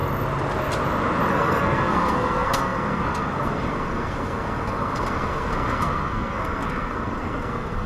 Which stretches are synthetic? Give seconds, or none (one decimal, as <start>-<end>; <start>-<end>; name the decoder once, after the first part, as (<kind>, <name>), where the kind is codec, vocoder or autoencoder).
1.3-7.9 (codec, SNAC)